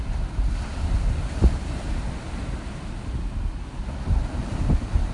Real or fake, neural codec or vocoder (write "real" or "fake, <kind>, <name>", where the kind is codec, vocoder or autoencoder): real